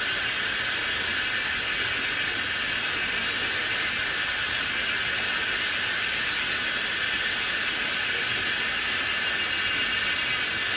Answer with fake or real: real